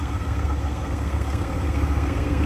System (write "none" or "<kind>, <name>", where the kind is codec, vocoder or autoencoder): codec, SNAC